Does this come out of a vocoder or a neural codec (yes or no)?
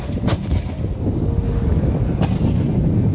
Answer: no